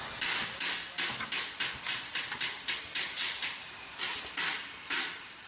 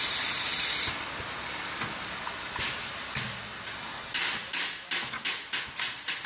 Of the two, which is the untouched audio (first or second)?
second